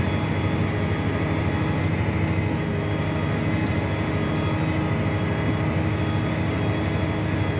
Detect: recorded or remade recorded